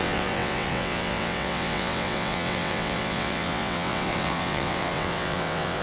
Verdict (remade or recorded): remade